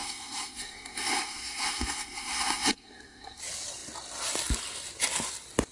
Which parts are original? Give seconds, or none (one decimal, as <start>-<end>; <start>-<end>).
3.4-5.7